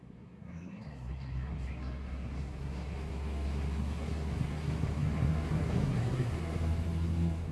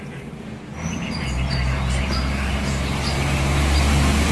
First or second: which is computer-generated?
first